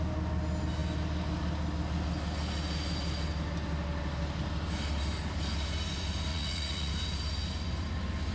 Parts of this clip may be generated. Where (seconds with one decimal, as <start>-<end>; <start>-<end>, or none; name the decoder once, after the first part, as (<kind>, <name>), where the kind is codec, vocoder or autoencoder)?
6.3-6.9 (vocoder, Vocos)